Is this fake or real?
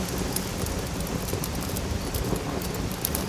real